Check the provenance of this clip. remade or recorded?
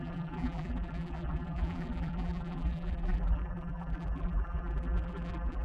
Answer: remade